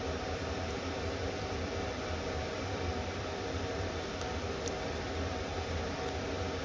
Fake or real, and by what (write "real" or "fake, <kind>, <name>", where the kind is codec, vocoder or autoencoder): fake, vocoder, BigVGAN v2